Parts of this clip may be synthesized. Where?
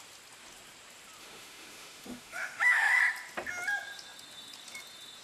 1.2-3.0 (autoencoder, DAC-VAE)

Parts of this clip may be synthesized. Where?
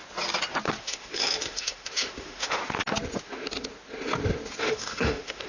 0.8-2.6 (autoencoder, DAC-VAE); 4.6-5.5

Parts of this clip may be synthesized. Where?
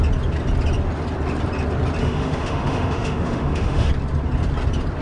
2.0-3.9 (autoencoder, DAC-VAE)